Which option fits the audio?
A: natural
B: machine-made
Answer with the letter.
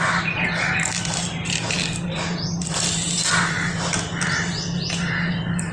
A